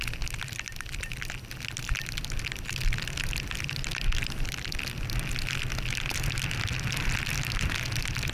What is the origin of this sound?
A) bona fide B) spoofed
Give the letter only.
A